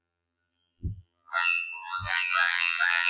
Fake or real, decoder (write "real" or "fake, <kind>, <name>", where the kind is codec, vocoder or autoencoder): fake, vocoder, BigVGAN v2